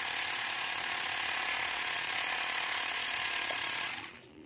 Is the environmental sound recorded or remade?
remade